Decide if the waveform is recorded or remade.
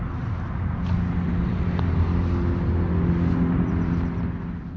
recorded